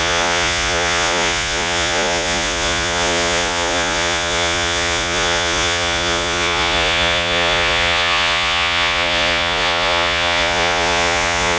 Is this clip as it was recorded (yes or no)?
no